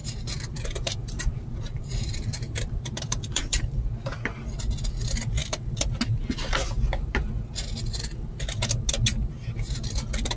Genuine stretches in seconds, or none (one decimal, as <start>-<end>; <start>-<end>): 3.6-10.4